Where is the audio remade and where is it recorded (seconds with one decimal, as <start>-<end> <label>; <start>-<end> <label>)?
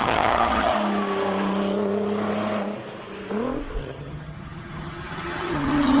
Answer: 0.0-0.7 remade; 0.7-3.8 recorded; 3.8-6.0 remade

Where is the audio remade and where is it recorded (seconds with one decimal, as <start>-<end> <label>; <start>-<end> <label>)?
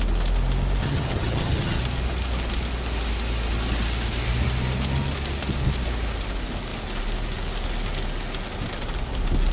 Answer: 0.0-0.8 recorded; 0.8-1.8 remade; 1.8-9.5 recorded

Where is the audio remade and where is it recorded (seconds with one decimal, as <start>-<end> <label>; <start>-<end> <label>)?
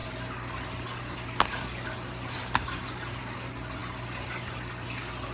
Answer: 0.0-5.3 recorded